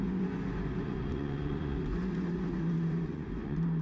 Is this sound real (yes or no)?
no